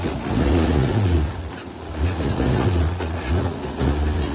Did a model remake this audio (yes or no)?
yes